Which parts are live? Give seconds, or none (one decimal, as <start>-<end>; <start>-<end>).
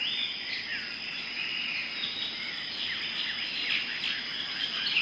0.0-5.0